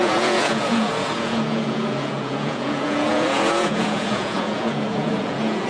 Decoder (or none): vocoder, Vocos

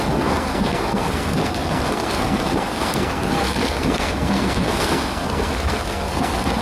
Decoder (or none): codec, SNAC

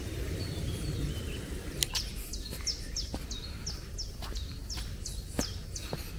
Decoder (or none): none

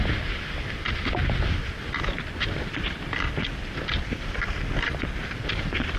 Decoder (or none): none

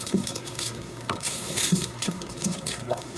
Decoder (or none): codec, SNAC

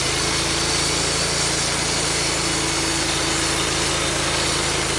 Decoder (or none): none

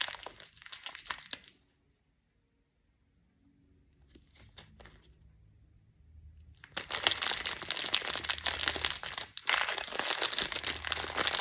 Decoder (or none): none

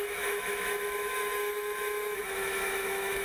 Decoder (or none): autoencoder, DAC-VAE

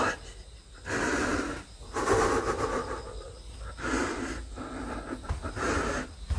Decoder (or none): none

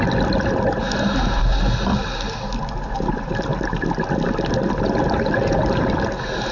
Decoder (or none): none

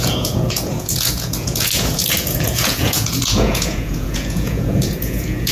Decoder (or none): vocoder, Vocos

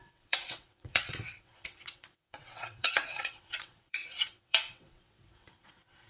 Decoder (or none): vocoder, WaveNeXt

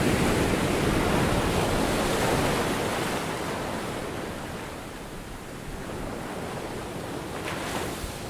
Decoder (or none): none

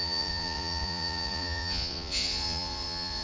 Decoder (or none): vocoder, Vocos